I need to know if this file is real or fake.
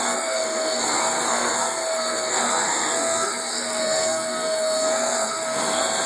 fake